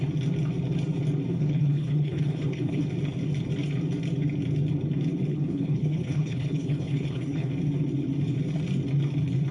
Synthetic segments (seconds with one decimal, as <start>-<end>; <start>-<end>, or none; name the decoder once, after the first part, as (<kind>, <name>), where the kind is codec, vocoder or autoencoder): 1.3-2.8 (codec, HILCodec); 5.3-7.5